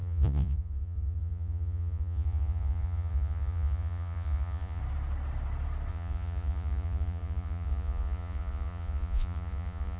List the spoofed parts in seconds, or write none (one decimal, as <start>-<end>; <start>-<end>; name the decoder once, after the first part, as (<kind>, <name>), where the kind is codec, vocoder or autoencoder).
0.0-4.8 (vocoder, Vocos); 5.9-10.0